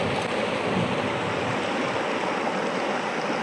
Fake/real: real